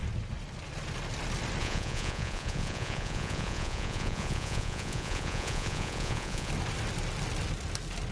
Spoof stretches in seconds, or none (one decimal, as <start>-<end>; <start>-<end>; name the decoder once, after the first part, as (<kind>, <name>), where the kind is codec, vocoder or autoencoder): 1.6-6.5 (vocoder, Vocos)